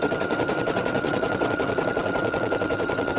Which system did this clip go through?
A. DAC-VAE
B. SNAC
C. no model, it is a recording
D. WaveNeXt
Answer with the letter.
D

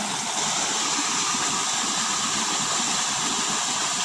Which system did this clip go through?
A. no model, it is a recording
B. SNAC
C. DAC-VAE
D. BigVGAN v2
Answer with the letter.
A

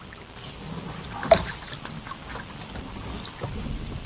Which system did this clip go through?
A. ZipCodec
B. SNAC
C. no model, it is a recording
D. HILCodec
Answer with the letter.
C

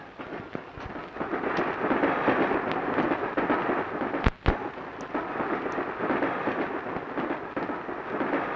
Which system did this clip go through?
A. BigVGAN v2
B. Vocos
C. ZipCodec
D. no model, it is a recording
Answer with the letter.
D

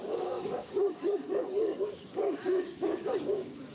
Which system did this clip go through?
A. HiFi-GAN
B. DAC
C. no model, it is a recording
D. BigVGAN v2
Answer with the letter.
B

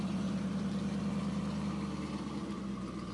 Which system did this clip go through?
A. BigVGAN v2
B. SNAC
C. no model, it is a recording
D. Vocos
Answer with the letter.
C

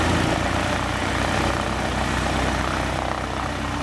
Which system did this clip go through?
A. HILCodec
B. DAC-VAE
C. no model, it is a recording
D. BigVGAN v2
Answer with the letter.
C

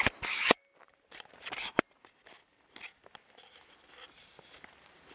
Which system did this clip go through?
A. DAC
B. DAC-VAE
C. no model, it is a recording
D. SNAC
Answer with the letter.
C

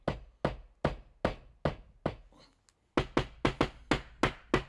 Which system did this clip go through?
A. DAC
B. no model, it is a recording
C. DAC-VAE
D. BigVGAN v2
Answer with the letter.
B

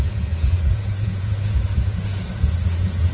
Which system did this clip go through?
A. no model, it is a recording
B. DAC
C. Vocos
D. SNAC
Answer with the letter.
C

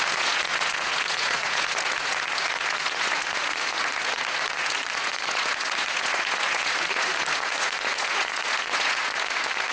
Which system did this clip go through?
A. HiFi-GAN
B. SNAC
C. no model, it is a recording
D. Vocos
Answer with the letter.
D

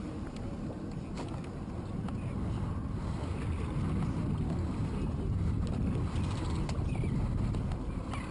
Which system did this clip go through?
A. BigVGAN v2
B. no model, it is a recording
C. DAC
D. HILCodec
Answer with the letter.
B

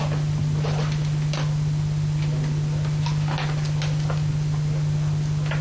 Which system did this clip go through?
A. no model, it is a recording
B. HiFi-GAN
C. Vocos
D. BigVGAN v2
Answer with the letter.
A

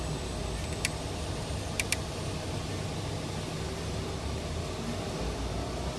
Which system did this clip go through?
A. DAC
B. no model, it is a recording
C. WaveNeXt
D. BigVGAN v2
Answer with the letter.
B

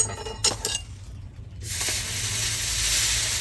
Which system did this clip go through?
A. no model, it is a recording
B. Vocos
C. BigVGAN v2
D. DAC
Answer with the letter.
A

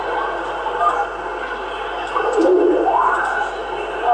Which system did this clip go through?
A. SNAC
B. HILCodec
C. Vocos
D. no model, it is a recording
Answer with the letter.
D